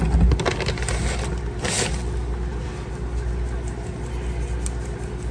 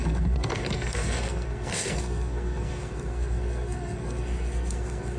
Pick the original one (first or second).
first